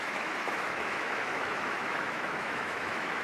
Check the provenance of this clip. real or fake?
fake